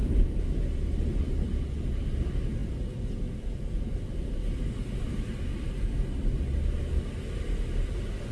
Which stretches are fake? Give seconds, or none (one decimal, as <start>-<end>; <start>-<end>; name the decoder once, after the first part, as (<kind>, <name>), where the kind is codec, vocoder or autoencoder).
none

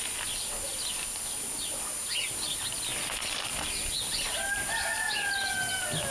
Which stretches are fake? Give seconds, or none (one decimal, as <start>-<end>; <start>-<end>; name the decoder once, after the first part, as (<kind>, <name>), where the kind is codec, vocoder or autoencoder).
none

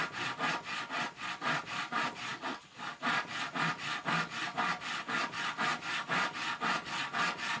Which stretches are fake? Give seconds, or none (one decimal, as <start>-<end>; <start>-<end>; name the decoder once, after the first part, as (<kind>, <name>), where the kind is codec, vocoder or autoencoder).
none